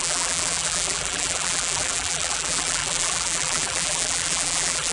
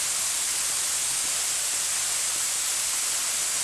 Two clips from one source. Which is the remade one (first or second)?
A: first